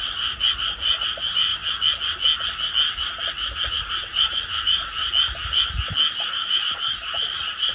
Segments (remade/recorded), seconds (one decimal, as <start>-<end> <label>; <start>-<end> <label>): 0.0-1.5 remade; 1.5-3.7 recorded; 3.7-5.0 remade; 5.0-6.2 recorded; 6.2-7.7 remade